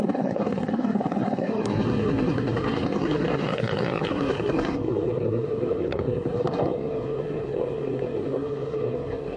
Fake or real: fake